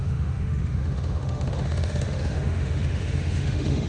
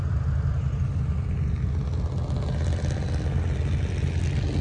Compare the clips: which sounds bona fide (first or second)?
second